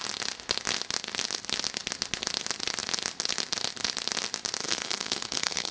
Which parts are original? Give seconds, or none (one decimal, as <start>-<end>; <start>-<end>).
0.0-4.6